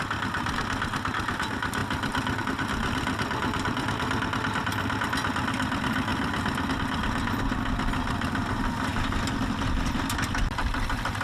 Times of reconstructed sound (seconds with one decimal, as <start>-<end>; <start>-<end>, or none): 6.1-6.7